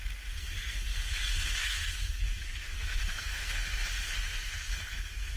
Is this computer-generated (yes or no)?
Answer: yes